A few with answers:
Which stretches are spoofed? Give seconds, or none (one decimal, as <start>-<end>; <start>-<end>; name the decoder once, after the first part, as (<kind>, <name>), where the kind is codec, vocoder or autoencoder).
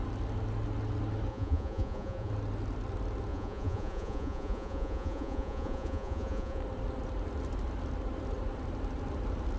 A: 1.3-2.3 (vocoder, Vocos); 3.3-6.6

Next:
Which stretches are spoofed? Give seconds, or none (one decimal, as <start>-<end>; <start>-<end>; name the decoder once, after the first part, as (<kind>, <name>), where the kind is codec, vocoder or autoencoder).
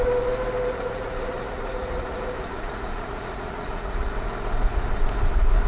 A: 0.7-4.1 (vocoder, Vocos)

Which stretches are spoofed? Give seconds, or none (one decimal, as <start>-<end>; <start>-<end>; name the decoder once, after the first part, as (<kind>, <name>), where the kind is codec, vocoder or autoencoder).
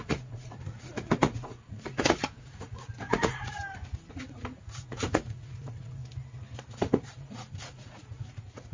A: 0.0-3.6 (vocoder, Vocos); 4.1-6.0; 6.7-8.7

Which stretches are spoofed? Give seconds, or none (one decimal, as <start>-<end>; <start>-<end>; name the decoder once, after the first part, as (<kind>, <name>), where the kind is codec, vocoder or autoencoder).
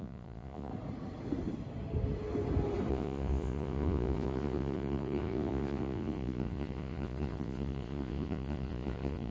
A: 0.0-0.7 (vocoder, Vocos); 2.9-9.3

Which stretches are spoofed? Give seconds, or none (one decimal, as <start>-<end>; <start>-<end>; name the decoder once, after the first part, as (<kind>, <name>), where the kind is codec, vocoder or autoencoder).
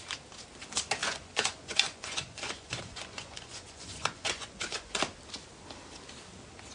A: 1.0-5.0 (vocoder, Vocos)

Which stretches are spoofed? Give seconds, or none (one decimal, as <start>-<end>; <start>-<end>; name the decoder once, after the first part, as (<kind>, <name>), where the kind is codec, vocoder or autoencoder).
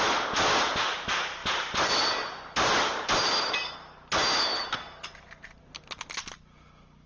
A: none